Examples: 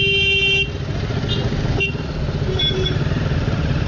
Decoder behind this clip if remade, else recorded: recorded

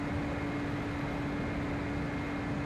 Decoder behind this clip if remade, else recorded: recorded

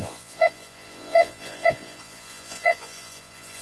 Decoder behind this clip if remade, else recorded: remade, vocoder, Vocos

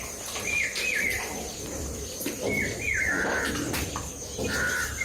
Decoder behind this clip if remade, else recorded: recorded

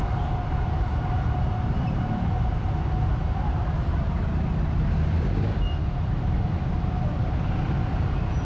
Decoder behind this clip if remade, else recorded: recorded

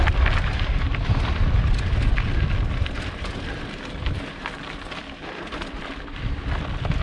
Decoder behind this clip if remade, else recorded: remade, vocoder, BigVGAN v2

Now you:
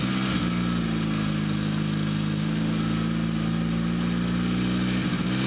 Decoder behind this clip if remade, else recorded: recorded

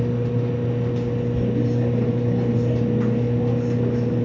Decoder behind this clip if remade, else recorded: recorded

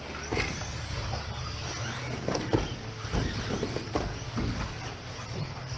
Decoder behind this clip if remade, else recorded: recorded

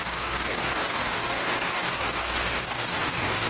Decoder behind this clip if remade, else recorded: remade, codec, DAC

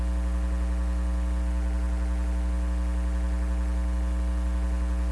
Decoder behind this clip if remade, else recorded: recorded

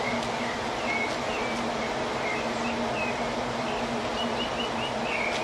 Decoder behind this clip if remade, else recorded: recorded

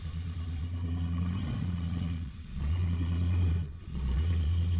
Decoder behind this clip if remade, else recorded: remade, vocoder, Vocos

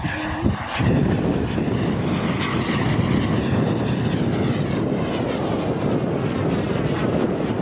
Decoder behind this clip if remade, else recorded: recorded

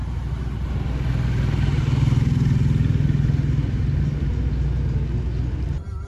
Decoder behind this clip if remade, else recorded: recorded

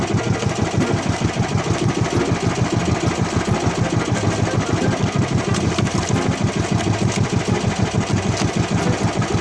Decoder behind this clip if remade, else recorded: recorded